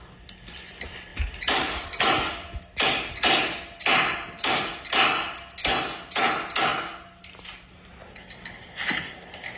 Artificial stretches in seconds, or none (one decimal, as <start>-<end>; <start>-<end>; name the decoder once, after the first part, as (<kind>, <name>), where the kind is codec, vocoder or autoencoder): none